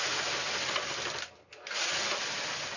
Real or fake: real